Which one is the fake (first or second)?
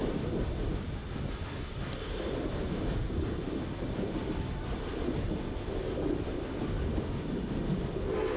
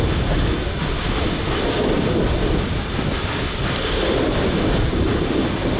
second